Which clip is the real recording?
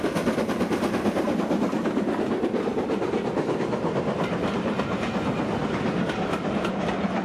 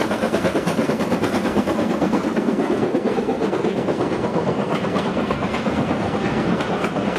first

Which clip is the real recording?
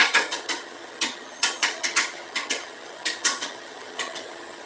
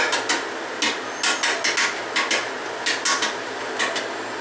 second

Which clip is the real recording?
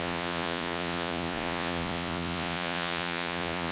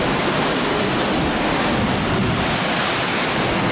second